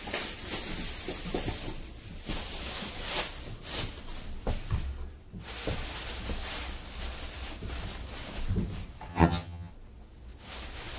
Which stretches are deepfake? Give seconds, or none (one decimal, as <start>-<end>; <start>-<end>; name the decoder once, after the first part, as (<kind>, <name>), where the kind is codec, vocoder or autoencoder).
9.1-9.7 (vocoder, HiFi-GAN)